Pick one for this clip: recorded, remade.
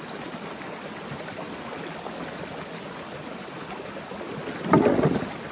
recorded